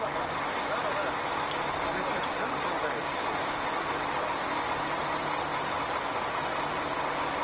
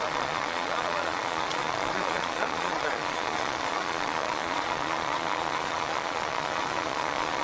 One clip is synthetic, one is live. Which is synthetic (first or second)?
second